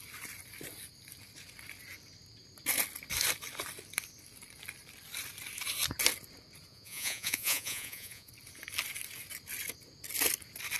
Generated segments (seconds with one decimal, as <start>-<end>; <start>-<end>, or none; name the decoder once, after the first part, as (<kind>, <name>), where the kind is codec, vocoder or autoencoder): 6.7-8.3 (vocoder, Vocos)